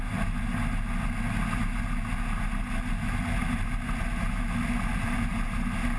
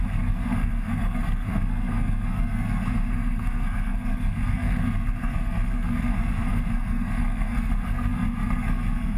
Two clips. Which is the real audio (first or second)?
first